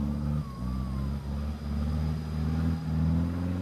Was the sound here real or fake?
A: real